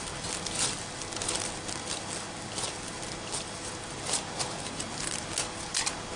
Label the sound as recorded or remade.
recorded